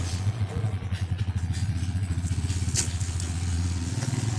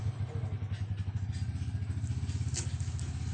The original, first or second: second